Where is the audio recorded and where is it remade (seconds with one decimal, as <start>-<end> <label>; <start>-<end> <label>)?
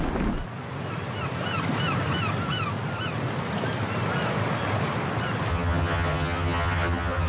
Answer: 0.0-5.5 recorded; 5.5-7.3 remade